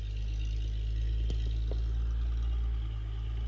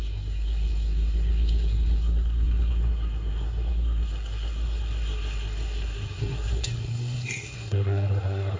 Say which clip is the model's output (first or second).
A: second